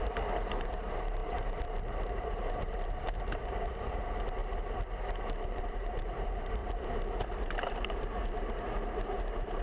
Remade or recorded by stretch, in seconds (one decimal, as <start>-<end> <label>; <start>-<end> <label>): 0.0-4.4 remade; 4.4-5.6 recorded; 5.6-9.6 remade